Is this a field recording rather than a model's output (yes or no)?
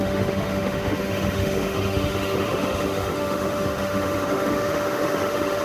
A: no